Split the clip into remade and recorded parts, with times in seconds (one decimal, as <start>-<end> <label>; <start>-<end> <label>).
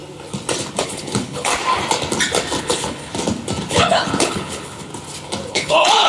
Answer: 0.0-0.8 recorded; 0.8-1.5 remade; 1.5-2.6 recorded; 2.6-3.1 remade; 3.1-3.7 recorded; 3.7-4.9 remade; 4.9-5.5 recorded; 5.5-6.1 remade